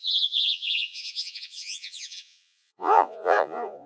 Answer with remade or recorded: remade